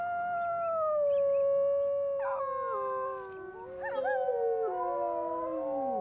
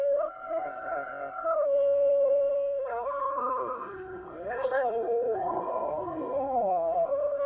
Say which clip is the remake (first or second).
second